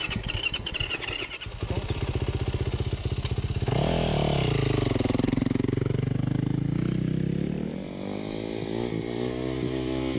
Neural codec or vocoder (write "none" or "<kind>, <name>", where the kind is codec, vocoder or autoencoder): none